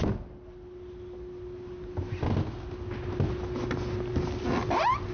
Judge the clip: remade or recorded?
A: recorded